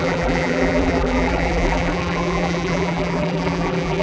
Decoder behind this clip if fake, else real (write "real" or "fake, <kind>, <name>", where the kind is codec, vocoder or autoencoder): fake, vocoder, BigVGAN v2